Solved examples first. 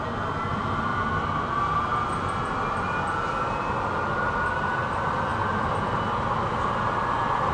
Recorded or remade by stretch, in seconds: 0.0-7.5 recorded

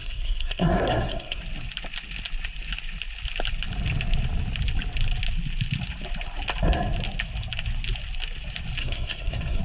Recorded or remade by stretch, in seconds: 0.0-1.4 remade; 1.4-8.8 recorded; 8.8-9.6 remade